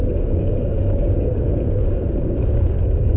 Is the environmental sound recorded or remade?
remade